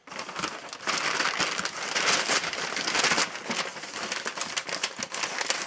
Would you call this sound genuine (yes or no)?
yes